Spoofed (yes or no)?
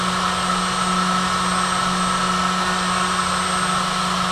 no